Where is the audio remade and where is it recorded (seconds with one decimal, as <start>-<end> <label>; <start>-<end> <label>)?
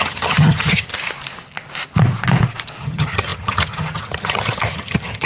0.0-0.9 remade; 0.9-2.8 recorded; 2.8-5.3 remade